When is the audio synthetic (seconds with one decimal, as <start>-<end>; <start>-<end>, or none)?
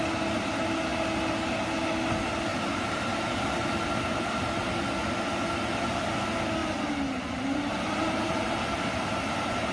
2.5-4.7; 6.6-8.6